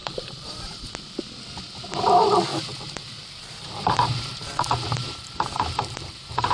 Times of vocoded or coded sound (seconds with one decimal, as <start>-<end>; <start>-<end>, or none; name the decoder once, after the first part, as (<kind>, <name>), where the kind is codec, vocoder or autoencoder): 0.0-0.9 (vocoder, BigVGAN v2); 2.5-6.5